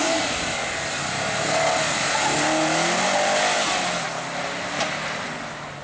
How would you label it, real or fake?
real